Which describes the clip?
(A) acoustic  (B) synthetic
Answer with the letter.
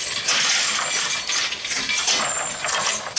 A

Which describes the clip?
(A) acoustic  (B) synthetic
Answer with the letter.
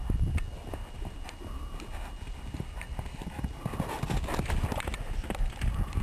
A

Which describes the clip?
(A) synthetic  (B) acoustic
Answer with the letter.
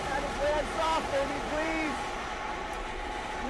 A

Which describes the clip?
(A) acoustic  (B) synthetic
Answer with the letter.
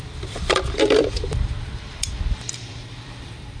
B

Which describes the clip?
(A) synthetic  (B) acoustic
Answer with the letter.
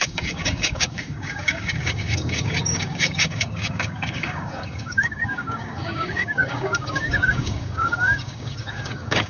A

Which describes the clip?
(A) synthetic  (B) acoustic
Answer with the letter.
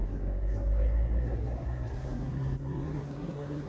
A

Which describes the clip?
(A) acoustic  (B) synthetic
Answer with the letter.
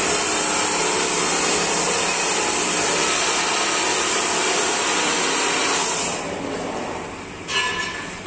A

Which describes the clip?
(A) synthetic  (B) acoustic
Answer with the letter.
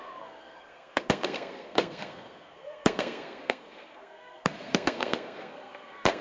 A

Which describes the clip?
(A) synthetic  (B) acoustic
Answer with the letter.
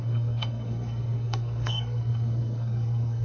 A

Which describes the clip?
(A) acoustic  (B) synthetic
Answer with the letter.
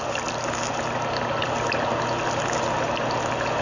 A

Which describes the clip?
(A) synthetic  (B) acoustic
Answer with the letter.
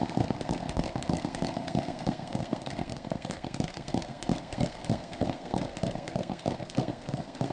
A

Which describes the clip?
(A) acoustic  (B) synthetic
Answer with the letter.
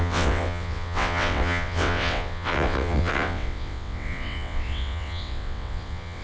B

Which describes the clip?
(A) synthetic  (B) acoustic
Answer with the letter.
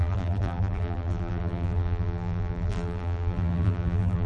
A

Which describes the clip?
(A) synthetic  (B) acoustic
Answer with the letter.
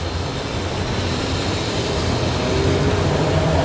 B